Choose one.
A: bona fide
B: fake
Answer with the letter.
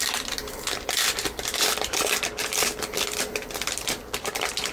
B